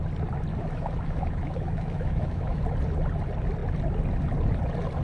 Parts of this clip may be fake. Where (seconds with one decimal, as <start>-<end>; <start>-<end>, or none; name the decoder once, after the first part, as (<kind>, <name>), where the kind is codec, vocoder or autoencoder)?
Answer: 0.5-2.6 (autoencoder, DAC-VAE)